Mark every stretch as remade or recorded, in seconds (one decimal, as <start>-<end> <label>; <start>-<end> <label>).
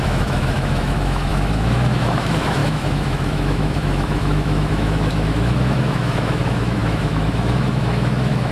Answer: 0.0-8.5 remade